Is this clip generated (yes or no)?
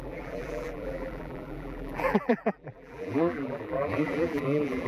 yes